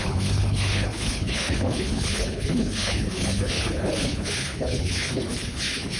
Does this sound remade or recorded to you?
remade